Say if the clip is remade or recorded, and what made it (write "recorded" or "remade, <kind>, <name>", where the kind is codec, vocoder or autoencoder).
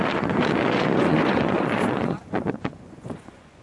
remade, vocoder, Vocos